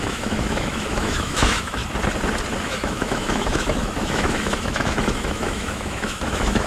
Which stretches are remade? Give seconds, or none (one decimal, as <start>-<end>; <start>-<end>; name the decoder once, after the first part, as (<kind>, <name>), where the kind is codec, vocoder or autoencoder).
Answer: 0.0-1.8 (autoencoder, DAC-VAE); 2.6-6.7